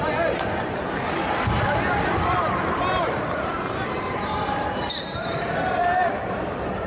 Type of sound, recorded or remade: remade